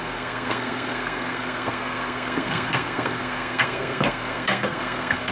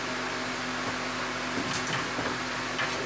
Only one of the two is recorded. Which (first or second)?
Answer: second